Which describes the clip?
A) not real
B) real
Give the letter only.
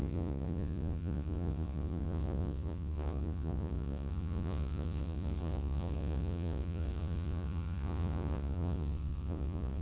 A